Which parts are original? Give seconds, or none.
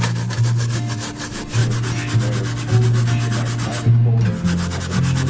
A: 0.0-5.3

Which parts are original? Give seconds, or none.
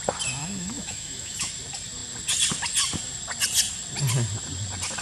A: 0.0-0.4; 1.5-5.0